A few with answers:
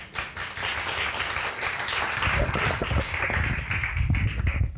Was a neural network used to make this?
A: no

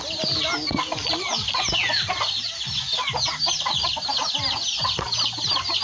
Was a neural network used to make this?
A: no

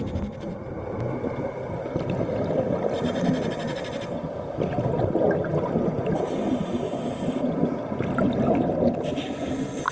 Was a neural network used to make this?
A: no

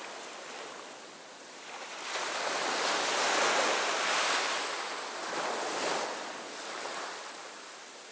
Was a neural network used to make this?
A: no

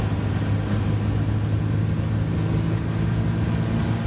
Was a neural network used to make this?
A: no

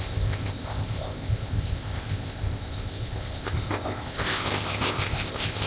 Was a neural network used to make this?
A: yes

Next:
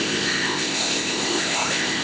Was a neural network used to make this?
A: yes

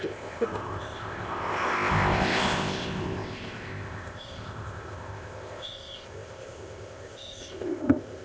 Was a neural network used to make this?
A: yes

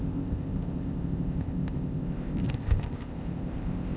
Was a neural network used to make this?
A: yes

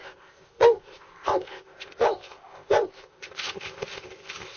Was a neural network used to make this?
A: yes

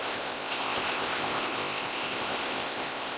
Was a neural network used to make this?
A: yes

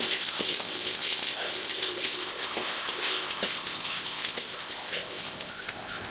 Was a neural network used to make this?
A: yes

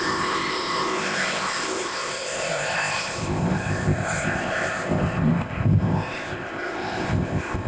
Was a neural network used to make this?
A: yes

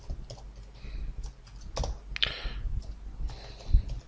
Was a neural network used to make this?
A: no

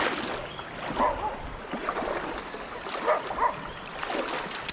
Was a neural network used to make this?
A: no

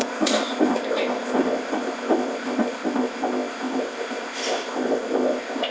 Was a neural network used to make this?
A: yes